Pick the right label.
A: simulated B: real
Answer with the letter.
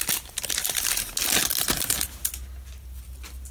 B